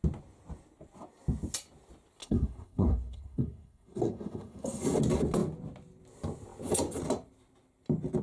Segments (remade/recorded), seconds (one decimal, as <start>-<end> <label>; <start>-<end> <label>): 0.0-2.2 recorded; 2.2-4.8 remade; 4.8-8.2 recorded